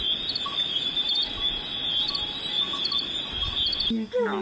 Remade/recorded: recorded